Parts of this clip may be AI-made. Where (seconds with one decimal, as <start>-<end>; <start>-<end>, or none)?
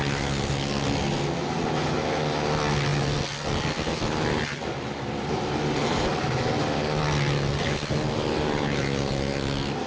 none